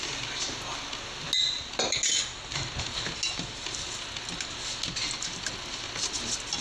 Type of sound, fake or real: real